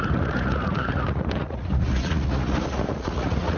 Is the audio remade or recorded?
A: remade